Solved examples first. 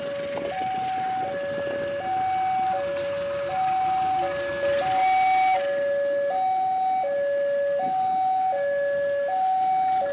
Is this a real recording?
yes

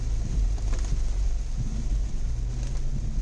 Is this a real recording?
yes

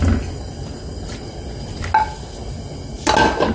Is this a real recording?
yes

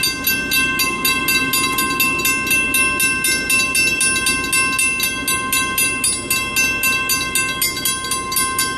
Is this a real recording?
yes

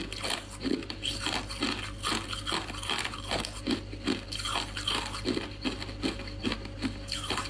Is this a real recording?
yes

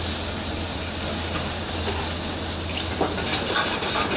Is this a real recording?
yes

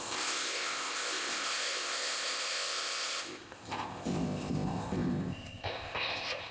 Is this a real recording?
no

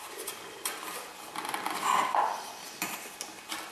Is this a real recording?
yes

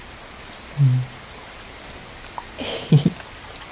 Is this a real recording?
yes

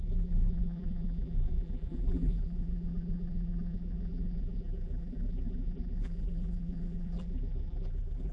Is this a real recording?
no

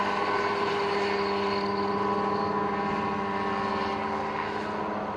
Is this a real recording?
yes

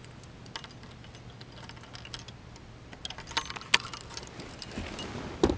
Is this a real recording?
yes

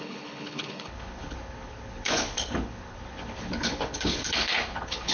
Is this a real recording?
no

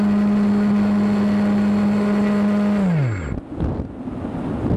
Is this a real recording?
yes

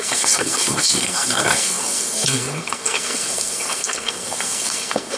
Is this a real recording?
no